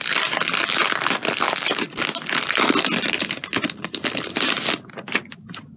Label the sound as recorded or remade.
recorded